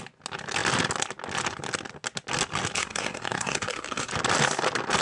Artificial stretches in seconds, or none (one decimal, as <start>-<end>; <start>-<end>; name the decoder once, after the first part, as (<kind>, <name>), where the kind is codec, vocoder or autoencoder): 2.8-4.1 (codec, SNAC)